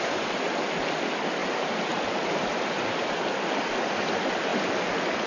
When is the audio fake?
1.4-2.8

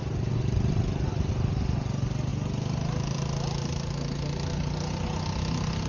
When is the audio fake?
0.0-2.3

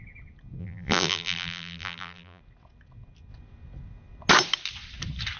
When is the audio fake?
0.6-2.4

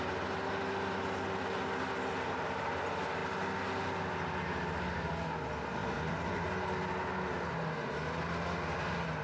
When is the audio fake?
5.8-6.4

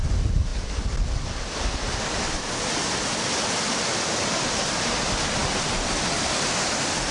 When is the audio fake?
none